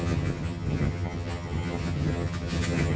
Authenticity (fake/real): fake